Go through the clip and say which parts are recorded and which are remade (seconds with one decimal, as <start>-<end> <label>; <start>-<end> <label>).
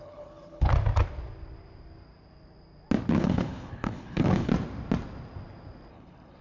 0.0-0.7 remade; 0.7-3.1 recorded; 3.1-4.5 remade; 4.5-5.9 recorded; 5.9-6.4 remade